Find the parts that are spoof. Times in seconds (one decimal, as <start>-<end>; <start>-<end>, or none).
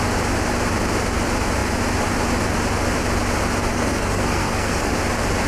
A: 3.7-4.9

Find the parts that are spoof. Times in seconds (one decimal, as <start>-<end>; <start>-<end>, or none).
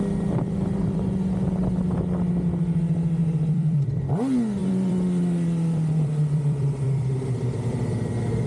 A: 3.2-4.1; 4.6-8.5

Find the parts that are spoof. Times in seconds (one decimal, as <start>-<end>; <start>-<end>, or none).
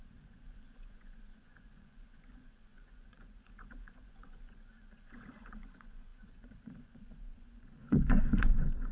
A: 0.0-8.9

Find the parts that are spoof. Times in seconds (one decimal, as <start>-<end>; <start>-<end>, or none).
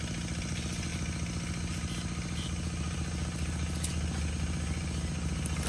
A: none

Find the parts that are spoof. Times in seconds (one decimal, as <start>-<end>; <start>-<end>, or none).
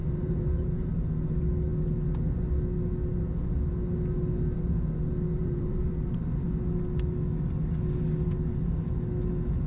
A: 0.0-0.9; 5.4-6.2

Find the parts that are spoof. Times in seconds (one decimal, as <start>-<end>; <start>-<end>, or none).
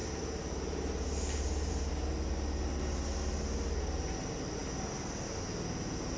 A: none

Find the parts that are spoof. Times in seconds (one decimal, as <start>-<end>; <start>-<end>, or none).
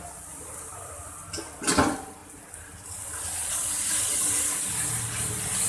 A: none